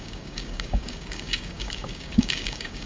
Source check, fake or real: fake